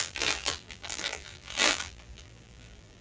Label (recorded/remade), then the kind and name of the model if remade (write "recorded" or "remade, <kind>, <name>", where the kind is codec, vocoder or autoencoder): remade, vocoder, BigVGAN v2